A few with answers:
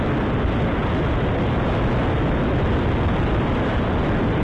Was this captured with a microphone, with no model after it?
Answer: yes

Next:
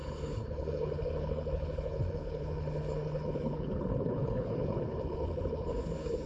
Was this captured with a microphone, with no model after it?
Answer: no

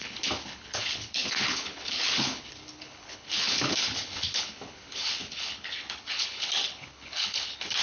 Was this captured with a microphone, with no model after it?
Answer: no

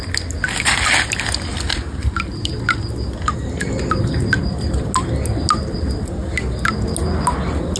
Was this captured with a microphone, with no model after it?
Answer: yes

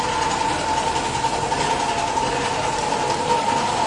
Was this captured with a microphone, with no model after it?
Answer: yes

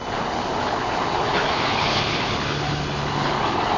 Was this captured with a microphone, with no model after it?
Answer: no